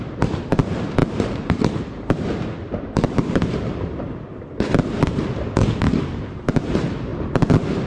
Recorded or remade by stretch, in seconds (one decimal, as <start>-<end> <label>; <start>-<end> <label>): 0.0-7.9 remade